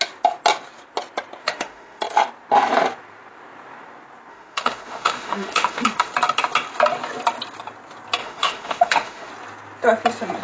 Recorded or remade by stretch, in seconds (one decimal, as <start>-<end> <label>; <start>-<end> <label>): 0.0-1.4 recorded; 1.4-2.0 remade; 2.0-4.3 recorded; 4.3-6.1 remade; 6.1-8.2 recorded; 8.2-9.3 remade; 9.3-10.4 recorded